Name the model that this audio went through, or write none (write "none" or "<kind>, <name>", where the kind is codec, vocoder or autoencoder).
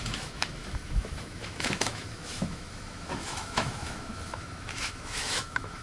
autoencoder, DAC-VAE